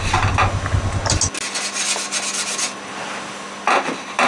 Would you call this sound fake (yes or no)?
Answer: no